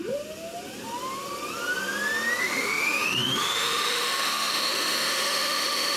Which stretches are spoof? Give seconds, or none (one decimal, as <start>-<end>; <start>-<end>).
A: 2.4-6.0